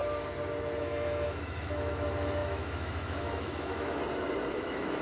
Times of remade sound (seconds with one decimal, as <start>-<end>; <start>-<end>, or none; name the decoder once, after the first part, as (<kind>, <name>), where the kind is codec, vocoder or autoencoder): 0.8-4.0 (autoencoder, DAC-VAE); 4.5-5.0